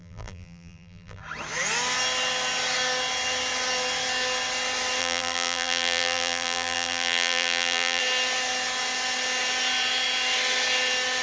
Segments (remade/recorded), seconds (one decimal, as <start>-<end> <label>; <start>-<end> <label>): 0.0-1.2 remade; 1.2-5.0 recorded; 5.0-8.0 remade; 8.0-11.2 recorded